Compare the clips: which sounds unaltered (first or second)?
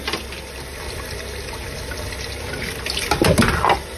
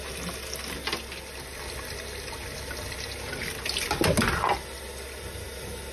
second